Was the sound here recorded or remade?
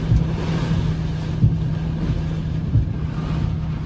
recorded